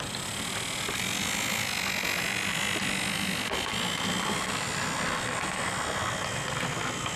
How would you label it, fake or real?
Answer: real